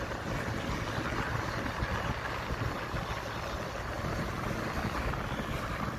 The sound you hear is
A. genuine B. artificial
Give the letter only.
A